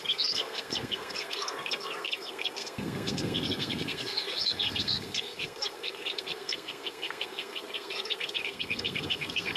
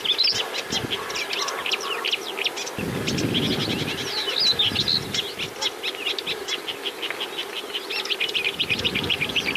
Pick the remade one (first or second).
first